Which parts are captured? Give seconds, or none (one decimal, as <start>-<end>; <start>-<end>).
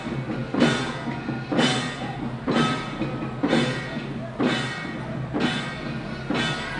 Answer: 0.0-6.8